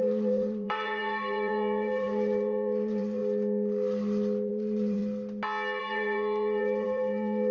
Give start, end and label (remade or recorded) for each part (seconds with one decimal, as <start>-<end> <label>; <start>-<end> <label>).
0.0-3.2 remade; 3.2-4.5 recorded; 4.5-5.0 remade; 5.0-5.8 recorded; 5.8-7.5 remade